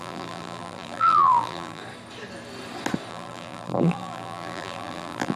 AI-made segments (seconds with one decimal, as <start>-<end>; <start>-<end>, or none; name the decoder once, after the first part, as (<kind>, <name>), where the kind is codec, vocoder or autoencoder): 0.0-1.8 (vocoder, BigVGAN v2); 3.1-5.4